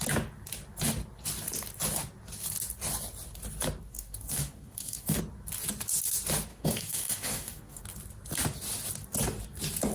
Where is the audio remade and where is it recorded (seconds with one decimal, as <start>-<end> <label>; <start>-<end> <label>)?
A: 0.0-3.9 recorded; 3.9-5.2 remade; 5.2-6.5 recorded; 6.5-7.8 remade; 7.8-9.9 recorded